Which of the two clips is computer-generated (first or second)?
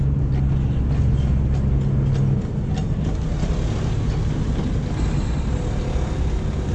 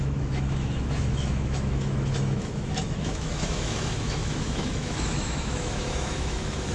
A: second